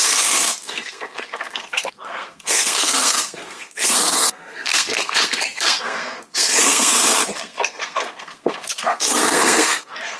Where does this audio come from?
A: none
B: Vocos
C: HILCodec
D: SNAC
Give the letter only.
D